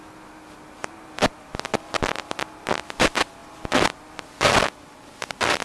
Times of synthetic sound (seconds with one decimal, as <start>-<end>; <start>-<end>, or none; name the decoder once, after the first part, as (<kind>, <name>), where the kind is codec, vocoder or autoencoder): 0.8-1.5 (vocoder, BigVGAN v2)